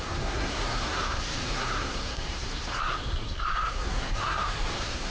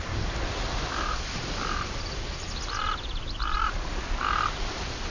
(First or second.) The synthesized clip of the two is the first